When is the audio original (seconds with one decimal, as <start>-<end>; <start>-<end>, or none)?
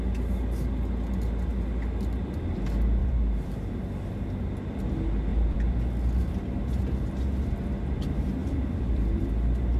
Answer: 0.0-3.0; 4.1-5.3; 5.8-8.4